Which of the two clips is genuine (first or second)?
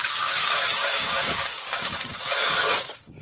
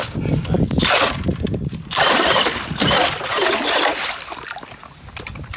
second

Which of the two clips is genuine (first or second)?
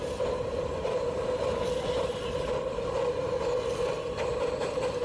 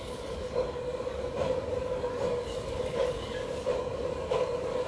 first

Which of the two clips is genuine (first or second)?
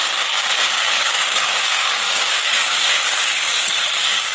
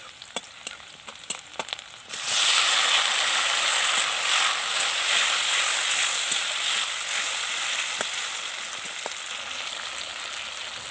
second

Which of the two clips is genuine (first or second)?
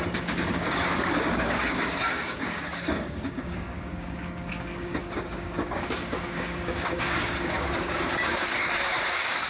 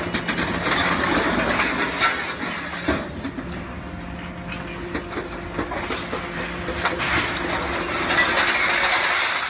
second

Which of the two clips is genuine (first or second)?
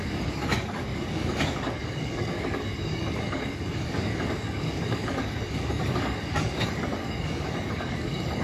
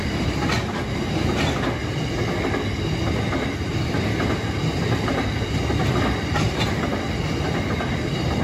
second